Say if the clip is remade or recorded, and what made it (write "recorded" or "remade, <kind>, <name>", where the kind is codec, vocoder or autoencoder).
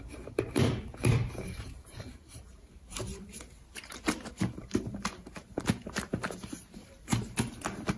remade, vocoder, BigVGAN v2